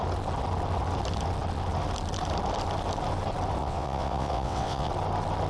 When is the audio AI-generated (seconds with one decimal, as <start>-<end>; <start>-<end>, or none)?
3.6-4.9